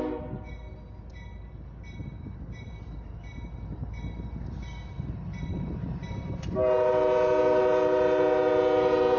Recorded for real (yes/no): yes